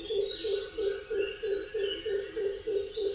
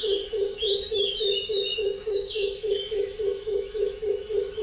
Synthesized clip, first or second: second